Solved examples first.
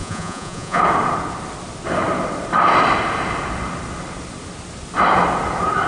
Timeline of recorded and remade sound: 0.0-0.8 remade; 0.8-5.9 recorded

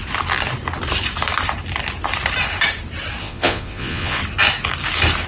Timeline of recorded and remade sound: 0.0-3.2 recorded; 3.2-4.2 remade; 4.2-5.3 recorded

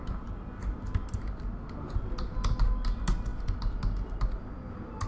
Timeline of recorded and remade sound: 0.0-5.1 recorded

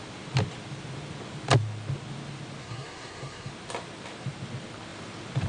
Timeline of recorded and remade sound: 0.0-2.6 recorded; 2.6-3.5 remade; 3.5-5.5 recorded

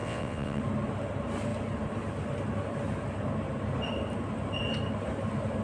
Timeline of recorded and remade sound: 0.0-0.6 remade; 0.6-5.6 recorded